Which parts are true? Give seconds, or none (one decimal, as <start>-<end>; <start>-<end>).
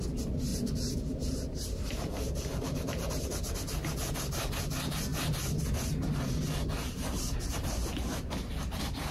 0.0-0.5; 3.2-9.1